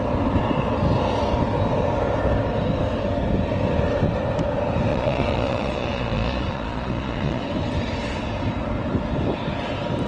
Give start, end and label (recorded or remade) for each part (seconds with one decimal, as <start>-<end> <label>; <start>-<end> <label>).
0.0-4.9 recorded; 4.9-7.4 remade; 7.4-10.1 recorded